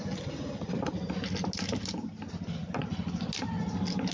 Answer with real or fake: real